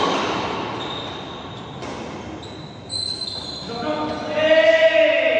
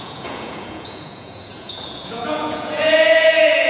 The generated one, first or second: second